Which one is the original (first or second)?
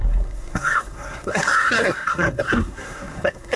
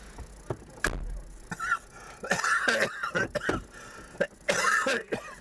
second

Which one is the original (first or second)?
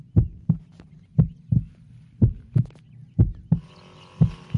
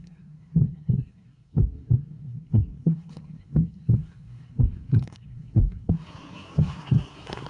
first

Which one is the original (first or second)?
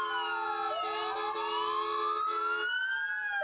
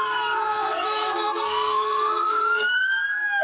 first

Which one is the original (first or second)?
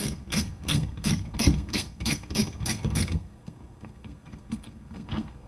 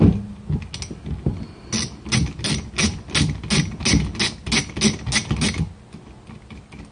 second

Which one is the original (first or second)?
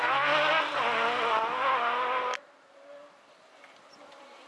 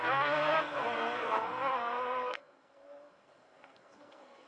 first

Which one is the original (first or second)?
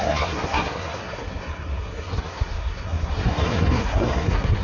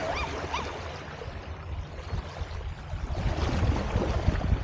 second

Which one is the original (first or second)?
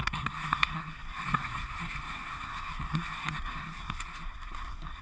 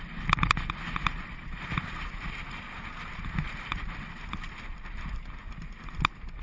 second